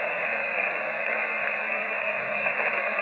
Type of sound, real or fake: fake